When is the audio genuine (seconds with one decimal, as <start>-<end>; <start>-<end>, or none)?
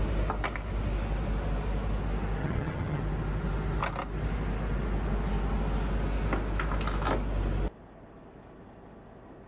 0.0-2.4; 3.0-9.5